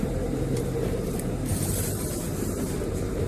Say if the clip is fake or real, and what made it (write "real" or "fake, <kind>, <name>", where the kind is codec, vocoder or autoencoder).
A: fake, vocoder, BigVGAN v2